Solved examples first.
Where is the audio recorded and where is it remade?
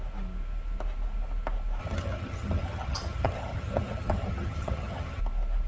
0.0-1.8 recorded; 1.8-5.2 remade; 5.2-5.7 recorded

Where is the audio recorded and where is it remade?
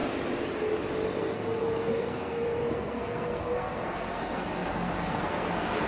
0.0-1.2 recorded; 1.2-5.9 remade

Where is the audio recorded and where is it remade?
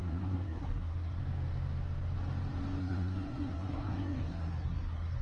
0.0-1.2 remade; 1.2-2.8 recorded; 2.8-5.2 remade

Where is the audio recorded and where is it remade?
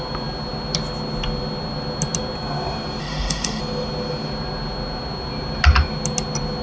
0.0-3.0 recorded; 3.0-3.6 remade; 3.6-6.6 recorded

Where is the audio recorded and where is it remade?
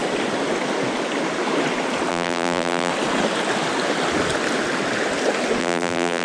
0.0-2.1 recorded; 2.1-2.9 remade; 2.9-5.6 recorded; 5.6-6.2 remade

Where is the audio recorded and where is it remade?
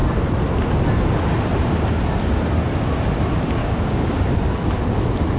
0.0-3.6 recorded; 3.6-4.3 remade; 4.3-5.4 recorded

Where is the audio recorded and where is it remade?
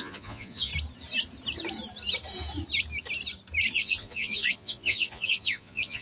0.0-0.7 remade; 0.7-3.7 recorded; 3.7-6.0 remade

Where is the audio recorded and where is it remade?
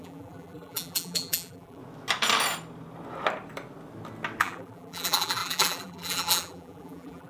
0.0-1.8 remade; 1.8-4.4 recorded; 4.4-7.3 remade